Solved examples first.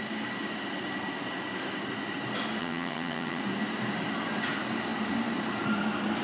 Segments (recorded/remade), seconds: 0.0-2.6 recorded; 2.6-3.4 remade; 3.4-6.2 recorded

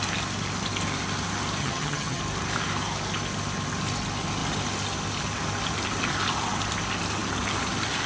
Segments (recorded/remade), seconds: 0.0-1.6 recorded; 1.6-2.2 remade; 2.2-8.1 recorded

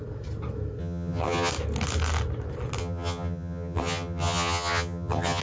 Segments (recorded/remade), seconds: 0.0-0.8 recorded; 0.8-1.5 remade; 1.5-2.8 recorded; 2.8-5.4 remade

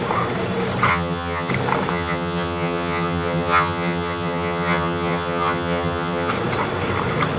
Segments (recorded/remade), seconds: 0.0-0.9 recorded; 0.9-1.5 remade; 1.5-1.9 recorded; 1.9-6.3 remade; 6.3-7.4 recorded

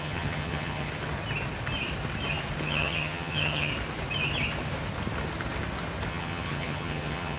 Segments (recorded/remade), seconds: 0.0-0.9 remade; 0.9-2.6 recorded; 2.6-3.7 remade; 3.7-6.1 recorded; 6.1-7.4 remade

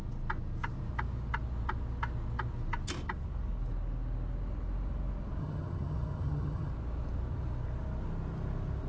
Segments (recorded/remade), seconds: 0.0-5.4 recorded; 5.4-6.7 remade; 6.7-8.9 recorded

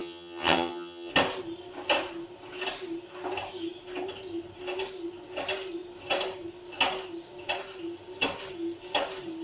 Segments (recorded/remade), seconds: 0.0-1.1 remade; 1.1-9.4 recorded